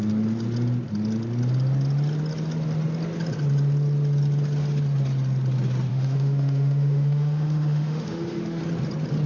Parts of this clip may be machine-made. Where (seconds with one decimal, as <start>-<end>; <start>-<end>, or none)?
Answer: 5.9-8.6